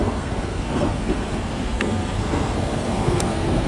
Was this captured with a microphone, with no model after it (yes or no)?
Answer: no